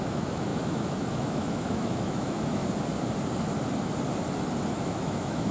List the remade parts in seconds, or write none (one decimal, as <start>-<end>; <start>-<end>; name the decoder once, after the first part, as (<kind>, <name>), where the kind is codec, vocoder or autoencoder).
0.0-2.6 (autoencoder, DAC-VAE); 4.7-5.5